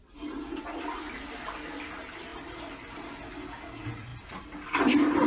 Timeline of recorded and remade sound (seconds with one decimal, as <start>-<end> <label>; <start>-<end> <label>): 0.0-2.3 recorded; 2.3-3.3 remade; 3.3-4.1 recorded; 4.1-5.3 remade